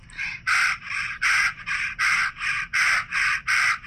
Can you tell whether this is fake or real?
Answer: real